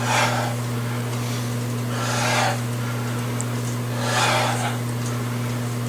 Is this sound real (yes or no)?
yes